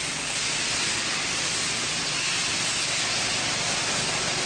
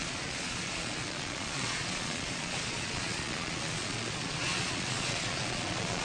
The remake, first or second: second